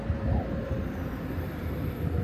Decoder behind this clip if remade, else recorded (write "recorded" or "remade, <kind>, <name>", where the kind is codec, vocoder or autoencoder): remade, vocoder, BigVGAN v2